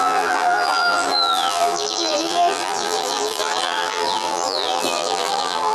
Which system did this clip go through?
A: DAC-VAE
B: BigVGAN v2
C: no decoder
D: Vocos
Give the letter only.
B